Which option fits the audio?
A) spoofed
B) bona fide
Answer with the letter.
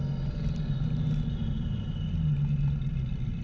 B